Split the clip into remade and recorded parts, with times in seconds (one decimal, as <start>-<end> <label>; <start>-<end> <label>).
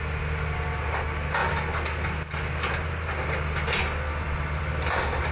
0.0-5.3 recorded